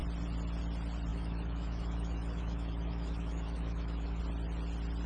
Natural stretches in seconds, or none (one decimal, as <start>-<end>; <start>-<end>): 0.0-1.1; 4.2-5.1